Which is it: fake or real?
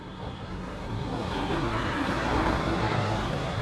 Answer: fake